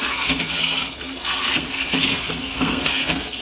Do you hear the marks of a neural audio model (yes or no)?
yes